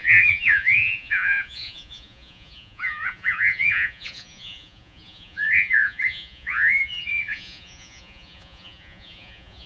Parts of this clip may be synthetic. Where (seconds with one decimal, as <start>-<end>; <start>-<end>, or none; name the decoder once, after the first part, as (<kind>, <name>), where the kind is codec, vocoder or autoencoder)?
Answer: 0.0-9.7 (vocoder, Vocos)